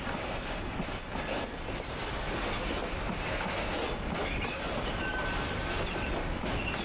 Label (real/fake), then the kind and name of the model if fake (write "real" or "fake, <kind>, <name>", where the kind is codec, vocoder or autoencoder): real